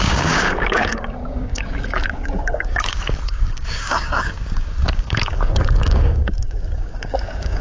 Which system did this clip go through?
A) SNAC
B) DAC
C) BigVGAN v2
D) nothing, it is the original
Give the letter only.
B